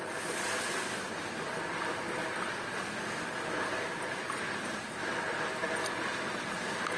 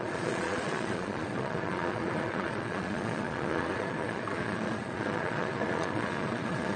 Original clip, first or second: first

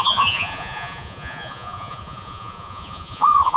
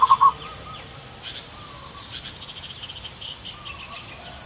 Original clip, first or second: second